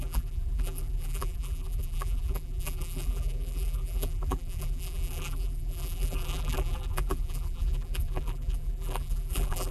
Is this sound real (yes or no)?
no